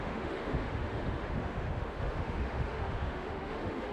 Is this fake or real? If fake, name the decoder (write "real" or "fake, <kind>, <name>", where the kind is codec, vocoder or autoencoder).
fake, autoencoder, DAC-VAE